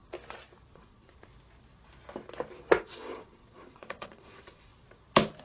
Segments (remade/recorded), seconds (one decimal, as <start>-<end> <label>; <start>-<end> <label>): 0.0-0.7 recorded; 0.7-1.3 remade; 1.3-2.8 recorded; 2.8-4.7 remade; 4.7-5.4 recorded